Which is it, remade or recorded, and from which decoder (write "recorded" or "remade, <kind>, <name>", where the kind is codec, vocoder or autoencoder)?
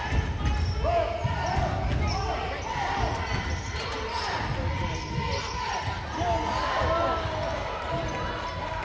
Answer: recorded